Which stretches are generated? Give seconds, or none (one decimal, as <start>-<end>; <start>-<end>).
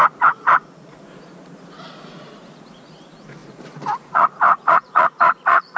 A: 0.0-5.8